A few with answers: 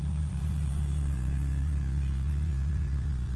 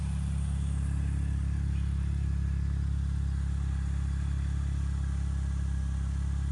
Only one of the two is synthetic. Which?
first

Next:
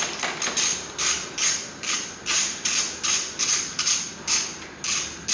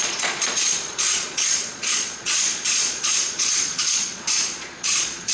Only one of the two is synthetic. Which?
second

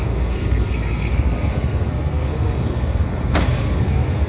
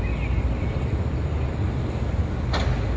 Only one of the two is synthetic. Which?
first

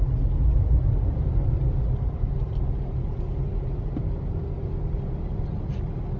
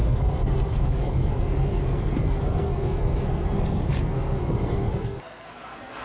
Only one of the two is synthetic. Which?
second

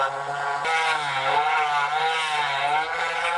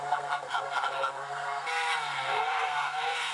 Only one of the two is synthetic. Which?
second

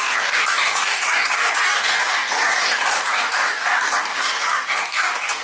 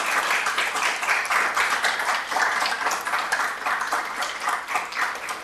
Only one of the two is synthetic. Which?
first